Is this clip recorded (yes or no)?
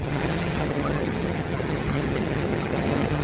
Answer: no